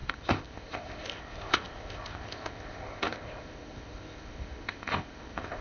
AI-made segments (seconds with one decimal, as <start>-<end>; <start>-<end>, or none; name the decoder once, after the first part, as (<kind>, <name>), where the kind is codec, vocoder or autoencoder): 0.0-5.6 (codec, ZipCodec)